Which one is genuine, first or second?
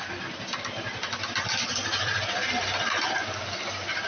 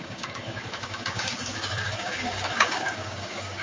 first